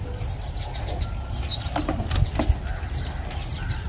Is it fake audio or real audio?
real